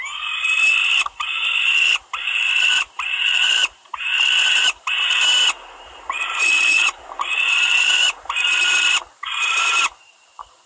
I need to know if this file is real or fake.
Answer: fake